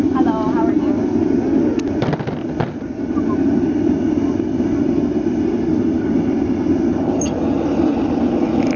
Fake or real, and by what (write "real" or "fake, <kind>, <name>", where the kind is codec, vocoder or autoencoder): real